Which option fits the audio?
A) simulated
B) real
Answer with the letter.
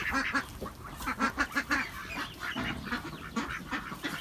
B